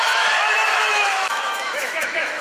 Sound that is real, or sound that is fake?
fake